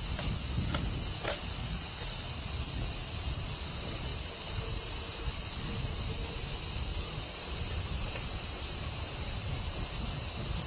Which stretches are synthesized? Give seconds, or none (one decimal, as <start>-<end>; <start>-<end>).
1.6-2.9